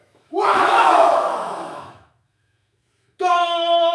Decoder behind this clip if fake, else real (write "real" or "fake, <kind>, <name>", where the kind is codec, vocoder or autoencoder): fake, autoencoder, DAC-VAE